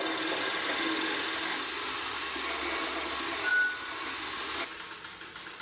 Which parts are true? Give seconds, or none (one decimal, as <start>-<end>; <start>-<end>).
0.0-5.6